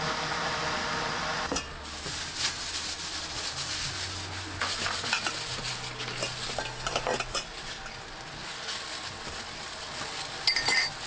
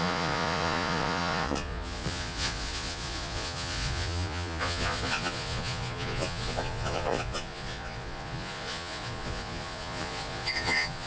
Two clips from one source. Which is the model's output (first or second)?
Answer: second